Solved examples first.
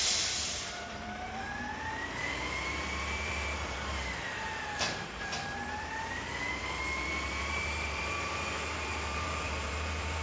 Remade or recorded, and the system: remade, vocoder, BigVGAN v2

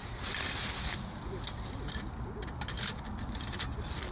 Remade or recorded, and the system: recorded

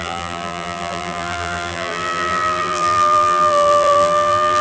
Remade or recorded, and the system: remade, vocoder, BigVGAN v2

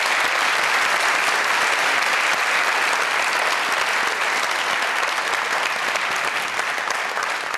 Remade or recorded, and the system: recorded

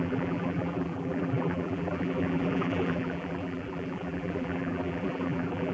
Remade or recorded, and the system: remade, vocoder, BigVGAN v2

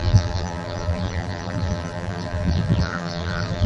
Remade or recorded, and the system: remade, vocoder, BigVGAN v2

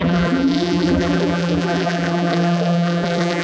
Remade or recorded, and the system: remade, vocoder, BigVGAN v2